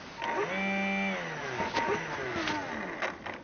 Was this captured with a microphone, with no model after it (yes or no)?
yes